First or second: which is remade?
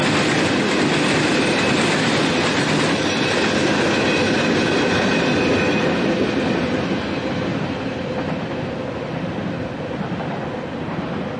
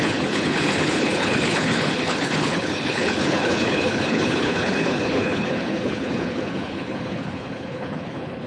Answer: second